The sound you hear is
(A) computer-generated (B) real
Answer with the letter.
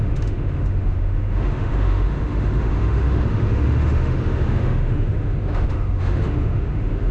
A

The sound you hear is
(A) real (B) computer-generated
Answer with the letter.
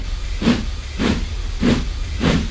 B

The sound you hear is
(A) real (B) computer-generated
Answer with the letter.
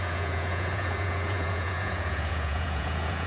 B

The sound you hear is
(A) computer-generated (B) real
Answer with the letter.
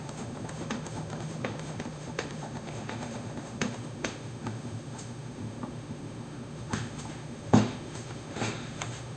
A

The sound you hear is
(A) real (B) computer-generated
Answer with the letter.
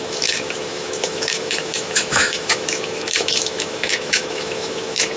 B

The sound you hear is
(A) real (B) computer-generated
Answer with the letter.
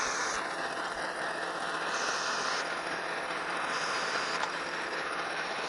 B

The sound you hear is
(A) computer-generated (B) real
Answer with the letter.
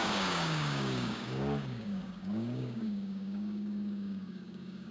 A